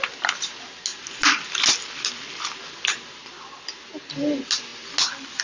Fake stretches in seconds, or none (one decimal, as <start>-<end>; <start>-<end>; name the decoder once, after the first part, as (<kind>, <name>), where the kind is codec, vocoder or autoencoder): none